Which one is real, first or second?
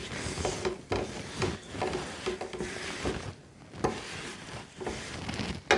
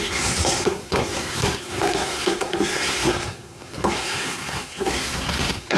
first